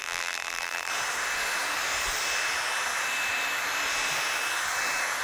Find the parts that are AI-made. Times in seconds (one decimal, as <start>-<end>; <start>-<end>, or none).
0.0-0.9